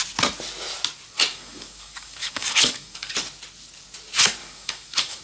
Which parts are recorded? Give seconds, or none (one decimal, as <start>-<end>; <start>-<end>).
0.0-1.3; 3.1-4.4